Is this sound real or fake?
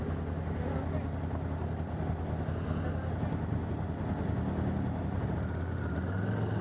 real